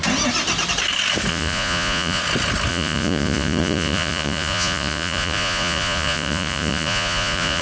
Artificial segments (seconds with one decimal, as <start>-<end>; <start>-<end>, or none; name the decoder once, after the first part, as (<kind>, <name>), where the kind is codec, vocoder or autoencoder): 1.3-2.2 (vocoder, Vocos); 2.7-7.6